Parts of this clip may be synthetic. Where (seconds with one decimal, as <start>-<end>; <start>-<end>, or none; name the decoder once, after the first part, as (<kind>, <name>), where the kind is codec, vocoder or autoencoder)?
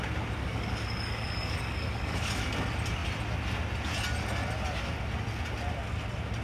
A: 0.4-2.3 (codec, DAC)